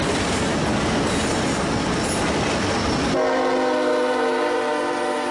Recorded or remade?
recorded